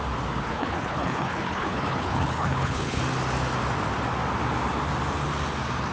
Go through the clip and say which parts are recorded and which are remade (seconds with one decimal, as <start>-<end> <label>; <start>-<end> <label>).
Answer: 0.0-0.4 recorded; 0.4-3.0 remade; 3.0-5.9 recorded